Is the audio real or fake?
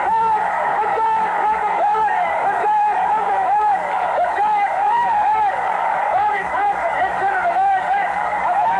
fake